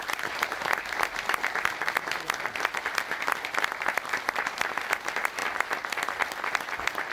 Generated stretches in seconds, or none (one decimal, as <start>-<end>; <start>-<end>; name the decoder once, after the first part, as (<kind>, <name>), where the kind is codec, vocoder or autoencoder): none